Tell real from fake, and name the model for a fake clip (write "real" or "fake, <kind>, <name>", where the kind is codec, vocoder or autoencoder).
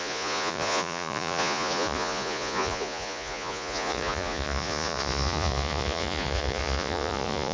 fake, vocoder, Vocos